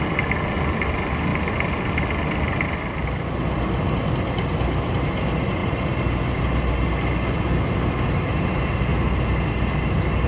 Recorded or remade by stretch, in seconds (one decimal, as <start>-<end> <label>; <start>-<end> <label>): 0.0-10.3 recorded